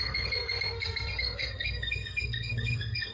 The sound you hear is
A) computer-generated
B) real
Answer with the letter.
A